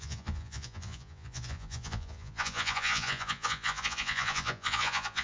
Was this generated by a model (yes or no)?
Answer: yes